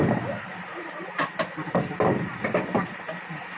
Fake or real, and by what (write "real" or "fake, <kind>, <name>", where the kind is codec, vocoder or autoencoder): real